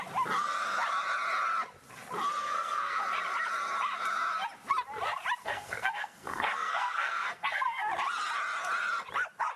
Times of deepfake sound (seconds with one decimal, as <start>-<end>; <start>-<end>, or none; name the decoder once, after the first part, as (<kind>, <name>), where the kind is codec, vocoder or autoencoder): 2.4-3.0 (codec, SNAC); 5.4-7.9